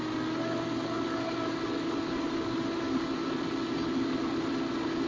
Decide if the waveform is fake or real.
real